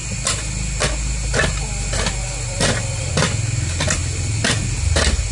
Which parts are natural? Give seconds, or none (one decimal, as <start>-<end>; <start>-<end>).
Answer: 0.0-5.3